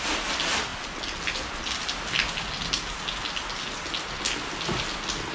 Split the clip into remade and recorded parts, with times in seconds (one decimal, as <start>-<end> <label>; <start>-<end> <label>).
0.0-5.3 recorded